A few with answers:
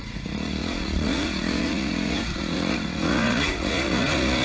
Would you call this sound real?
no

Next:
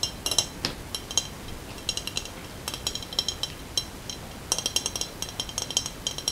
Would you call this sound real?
yes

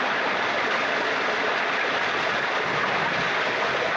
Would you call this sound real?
yes